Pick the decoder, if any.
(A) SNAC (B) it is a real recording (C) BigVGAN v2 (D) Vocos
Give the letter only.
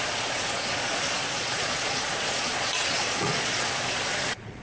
D